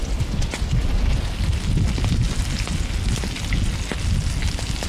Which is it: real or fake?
real